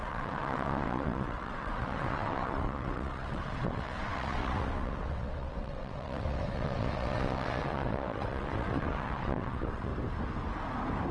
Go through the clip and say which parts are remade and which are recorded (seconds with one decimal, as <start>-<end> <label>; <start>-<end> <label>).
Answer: 0.0-9.9 remade; 9.9-11.1 recorded